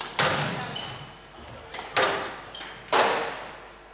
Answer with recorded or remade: recorded